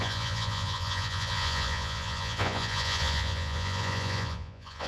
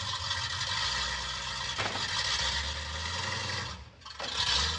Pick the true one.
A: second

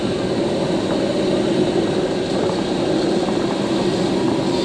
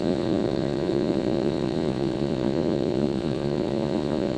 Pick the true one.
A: first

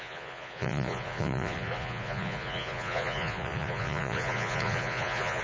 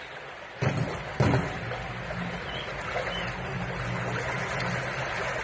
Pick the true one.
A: second